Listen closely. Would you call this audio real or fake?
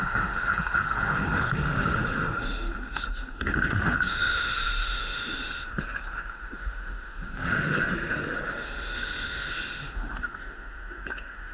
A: fake